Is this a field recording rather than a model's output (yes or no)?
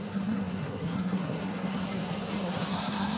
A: no